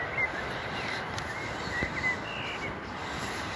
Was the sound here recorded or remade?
recorded